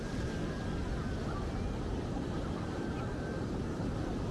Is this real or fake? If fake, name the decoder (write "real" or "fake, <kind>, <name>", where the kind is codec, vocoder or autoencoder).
real